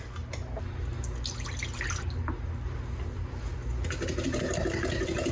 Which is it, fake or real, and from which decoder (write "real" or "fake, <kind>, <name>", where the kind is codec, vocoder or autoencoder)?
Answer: real